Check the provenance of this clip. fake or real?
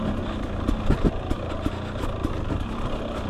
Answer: real